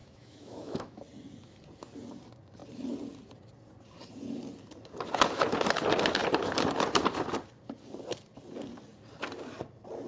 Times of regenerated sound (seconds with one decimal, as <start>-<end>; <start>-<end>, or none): 0.0-1.0